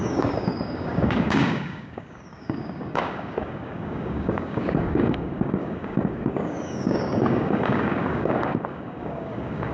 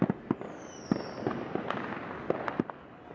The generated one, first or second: first